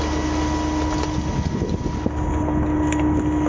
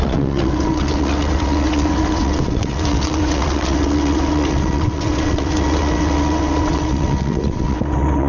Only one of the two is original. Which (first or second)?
first